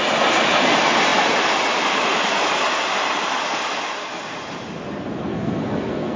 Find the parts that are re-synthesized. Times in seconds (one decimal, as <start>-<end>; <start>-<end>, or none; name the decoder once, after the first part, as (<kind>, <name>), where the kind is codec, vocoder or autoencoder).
5.2-6.2 (codec, SNAC)

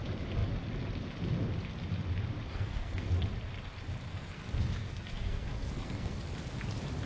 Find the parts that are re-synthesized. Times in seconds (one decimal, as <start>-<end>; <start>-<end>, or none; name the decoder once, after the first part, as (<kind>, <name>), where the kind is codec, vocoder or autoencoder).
2.5-3.1 (codec, SNAC); 4.1-6.2

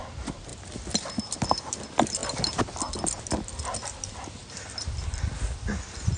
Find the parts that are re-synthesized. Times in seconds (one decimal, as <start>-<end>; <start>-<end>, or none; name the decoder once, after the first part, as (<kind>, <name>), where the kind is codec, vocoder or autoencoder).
none

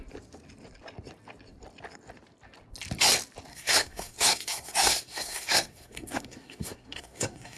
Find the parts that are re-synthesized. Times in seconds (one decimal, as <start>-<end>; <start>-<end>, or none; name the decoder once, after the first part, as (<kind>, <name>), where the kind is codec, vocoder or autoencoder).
3.5-7.6 (codec, SNAC)